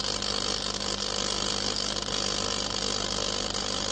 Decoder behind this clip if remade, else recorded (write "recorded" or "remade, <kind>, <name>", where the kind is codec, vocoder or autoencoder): recorded